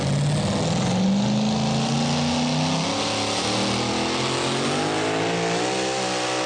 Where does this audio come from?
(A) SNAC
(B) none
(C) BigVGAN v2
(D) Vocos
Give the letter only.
B